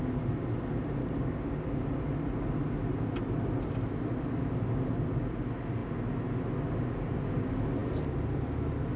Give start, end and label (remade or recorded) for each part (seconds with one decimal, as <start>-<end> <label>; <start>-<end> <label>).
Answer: 0.0-1.0 recorded; 1.0-1.7 remade; 1.7-9.0 recorded